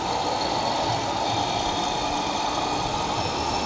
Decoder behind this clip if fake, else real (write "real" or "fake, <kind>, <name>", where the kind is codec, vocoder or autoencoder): real